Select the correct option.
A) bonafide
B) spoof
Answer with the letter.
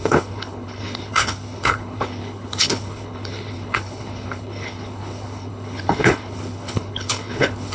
B